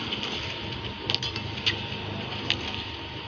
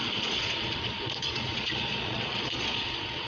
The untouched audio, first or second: first